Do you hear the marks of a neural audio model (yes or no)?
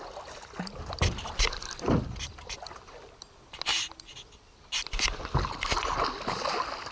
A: no